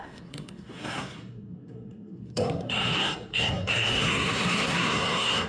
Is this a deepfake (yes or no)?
yes